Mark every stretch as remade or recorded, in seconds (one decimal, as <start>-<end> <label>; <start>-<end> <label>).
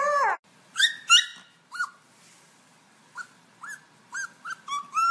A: 0.0-5.1 recorded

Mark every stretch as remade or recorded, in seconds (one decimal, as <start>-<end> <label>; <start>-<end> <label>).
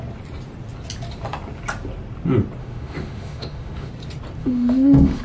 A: 0.0-2.6 recorded; 2.6-3.9 remade; 3.9-4.4 recorded; 4.4-5.2 remade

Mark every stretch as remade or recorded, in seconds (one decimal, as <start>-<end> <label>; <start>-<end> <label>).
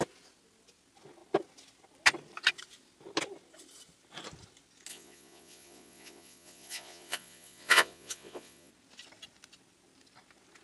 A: 0.0-4.9 recorded; 4.9-8.7 remade; 8.7-10.6 recorded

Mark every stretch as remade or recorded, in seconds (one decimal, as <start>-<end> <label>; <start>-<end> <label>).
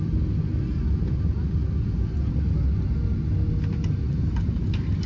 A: 0.0-5.1 recorded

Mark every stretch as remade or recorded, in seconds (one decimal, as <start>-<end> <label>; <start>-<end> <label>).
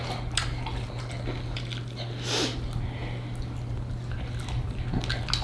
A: 0.0-5.4 recorded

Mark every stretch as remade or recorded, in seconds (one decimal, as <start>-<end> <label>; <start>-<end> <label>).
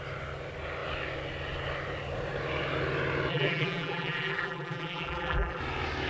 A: 0.0-3.3 recorded; 3.3-5.6 remade; 5.6-6.1 recorded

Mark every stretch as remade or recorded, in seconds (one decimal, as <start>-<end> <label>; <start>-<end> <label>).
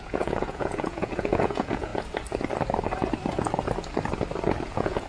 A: 0.0-1.9 remade; 1.9-4.6 recorded; 4.6-5.1 remade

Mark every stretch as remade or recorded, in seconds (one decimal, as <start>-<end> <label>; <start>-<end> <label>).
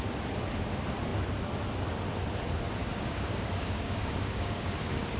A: 0.0-2.8 recorded; 2.8-4.7 remade; 4.7-5.2 recorded